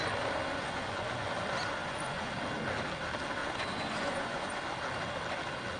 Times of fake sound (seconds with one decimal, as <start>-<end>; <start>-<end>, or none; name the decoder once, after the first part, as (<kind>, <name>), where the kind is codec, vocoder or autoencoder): 0.5-1.3 (vocoder, Vocos); 1.8-2.3; 3.4-4.6